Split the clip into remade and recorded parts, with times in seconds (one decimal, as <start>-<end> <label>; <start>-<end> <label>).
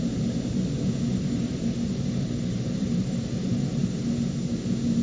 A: 0.0-1.1 recorded; 1.1-3.8 remade; 3.8-5.0 recorded